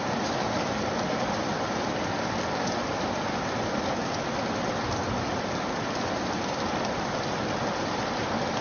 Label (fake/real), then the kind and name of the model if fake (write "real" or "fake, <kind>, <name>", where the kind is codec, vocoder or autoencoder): real